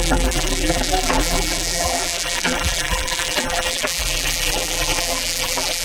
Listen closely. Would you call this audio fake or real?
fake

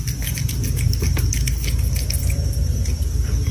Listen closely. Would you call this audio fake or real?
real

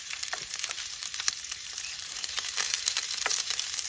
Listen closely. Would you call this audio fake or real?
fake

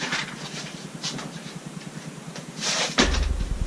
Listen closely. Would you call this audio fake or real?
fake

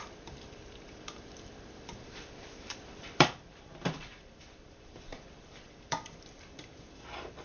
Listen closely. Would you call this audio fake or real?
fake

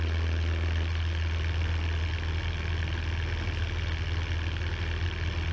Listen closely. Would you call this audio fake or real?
real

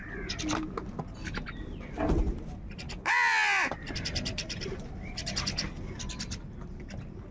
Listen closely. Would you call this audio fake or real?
real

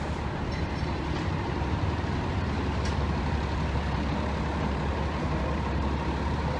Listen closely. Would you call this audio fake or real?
fake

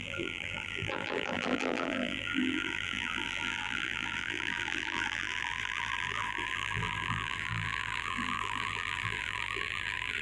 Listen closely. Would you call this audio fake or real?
fake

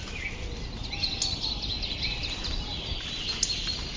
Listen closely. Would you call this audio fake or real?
real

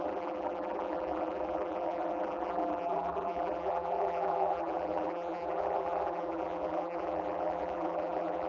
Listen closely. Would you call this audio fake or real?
fake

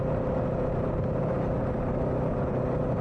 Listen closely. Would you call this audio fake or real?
real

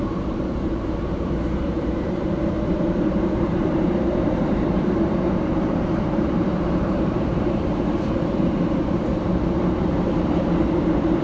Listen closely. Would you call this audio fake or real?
fake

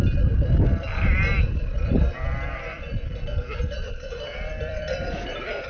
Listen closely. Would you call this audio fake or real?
fake